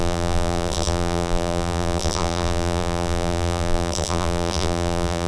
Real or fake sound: fake